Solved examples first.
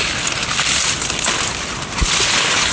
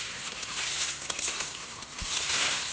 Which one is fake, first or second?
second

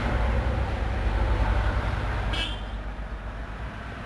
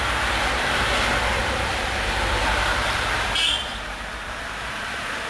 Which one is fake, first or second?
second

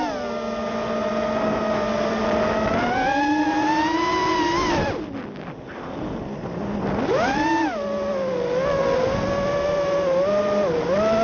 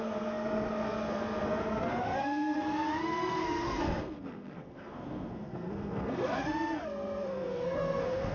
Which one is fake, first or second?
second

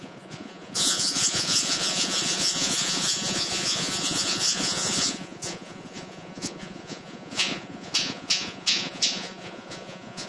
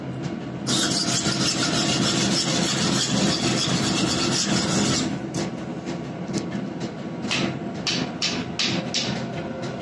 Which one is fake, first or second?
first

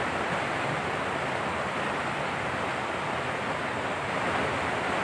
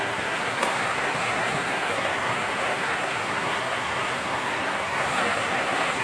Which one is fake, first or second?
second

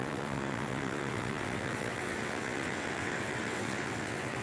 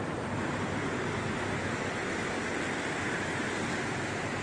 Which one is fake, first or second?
first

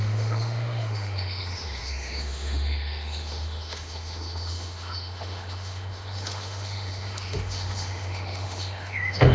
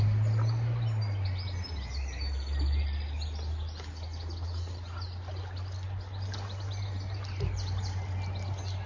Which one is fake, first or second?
first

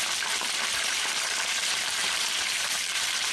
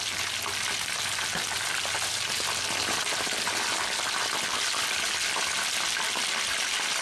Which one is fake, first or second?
first